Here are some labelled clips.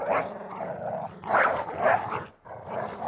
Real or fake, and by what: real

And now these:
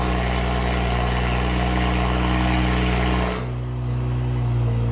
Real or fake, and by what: real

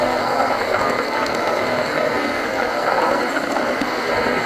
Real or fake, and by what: fake, codec, SNAC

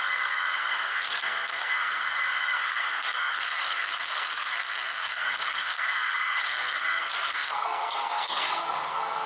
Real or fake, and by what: fake, codec, SNAC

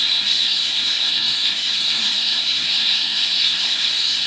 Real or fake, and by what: fake, codec, SNAC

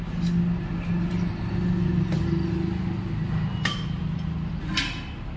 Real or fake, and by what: real